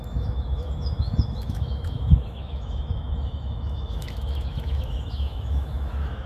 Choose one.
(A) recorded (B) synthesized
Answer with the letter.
B